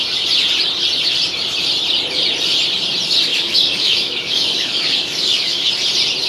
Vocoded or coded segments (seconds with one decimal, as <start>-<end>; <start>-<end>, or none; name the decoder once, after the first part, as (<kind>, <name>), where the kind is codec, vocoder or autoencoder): 3.3-5.7 (codec, DAC)